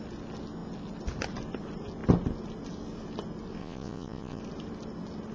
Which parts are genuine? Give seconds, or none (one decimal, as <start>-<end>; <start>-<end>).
0.0-3.6; 4.4-5.3